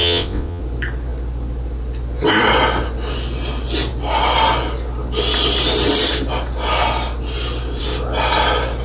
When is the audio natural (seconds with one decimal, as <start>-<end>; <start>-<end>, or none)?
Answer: 0.6-8.8

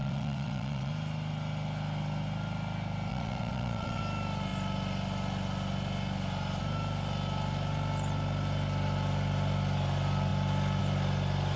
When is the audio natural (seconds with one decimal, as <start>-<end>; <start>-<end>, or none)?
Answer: 0.9-3.1; 4.0-11.6

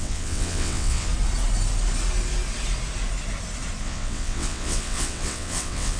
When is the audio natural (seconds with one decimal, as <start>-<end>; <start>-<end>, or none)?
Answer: 1.1-3.8

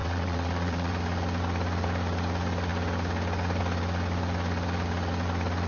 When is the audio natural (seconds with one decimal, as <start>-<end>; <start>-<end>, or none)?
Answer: 0.9-5.7